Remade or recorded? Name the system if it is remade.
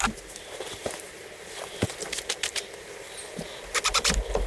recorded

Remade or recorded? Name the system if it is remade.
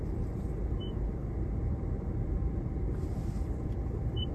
remade, vocoder, BigVGAN v2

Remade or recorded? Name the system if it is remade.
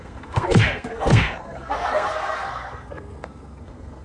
remade, codec, SNAC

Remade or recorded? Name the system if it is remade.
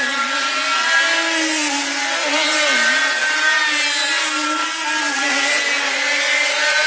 recorded